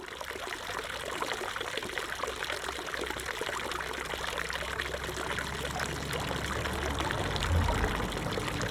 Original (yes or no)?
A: yes